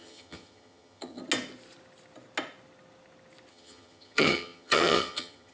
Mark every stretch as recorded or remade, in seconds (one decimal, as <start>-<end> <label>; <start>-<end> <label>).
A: 0.0-1.2 remade; 1.2-3.5 recorded; 3.5-5.5 remade